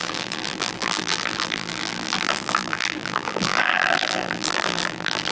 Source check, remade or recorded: remade